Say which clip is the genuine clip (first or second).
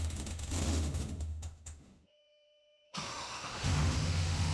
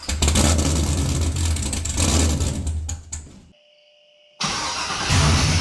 second